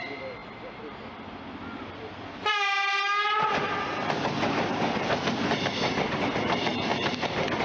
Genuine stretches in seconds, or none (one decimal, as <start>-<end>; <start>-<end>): 0.0-7.6